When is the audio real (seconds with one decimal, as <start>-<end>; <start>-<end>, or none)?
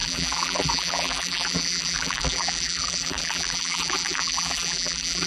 none